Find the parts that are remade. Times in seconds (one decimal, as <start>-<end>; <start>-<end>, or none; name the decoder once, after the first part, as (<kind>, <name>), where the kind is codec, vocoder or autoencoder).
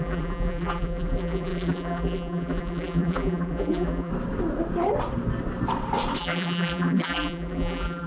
0.0-4.1 (vocoder, BigVGAN v2); 6.2-8.1